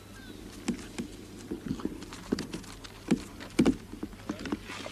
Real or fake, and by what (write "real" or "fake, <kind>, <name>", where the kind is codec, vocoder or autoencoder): real